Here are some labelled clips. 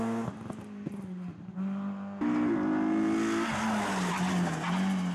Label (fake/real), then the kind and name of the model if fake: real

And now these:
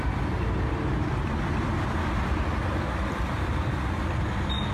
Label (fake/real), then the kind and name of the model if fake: real